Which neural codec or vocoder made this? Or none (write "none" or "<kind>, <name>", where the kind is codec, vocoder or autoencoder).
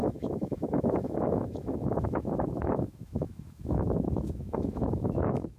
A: autoencoder, DAC-VAE